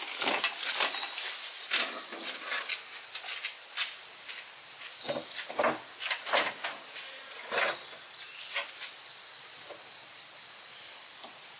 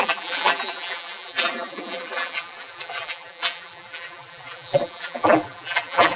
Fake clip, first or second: second